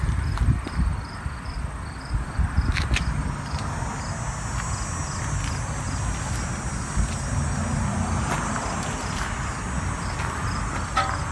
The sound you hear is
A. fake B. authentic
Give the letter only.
B